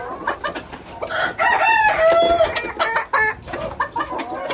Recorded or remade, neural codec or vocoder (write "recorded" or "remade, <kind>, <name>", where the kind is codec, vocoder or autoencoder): recorded